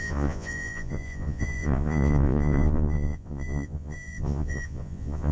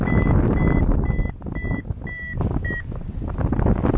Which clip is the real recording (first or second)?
second